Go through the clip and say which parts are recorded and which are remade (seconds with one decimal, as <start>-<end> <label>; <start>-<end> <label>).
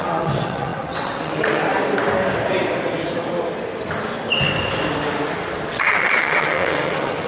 0.0-1.6 remade; 1.6-5.7 recorded; 5.7-7.3 remade